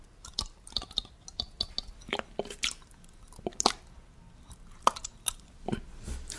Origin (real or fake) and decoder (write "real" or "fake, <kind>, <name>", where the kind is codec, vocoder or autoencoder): real